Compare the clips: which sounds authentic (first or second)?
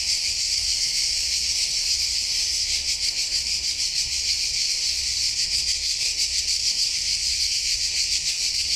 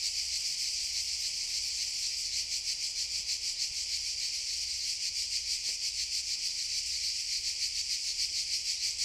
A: second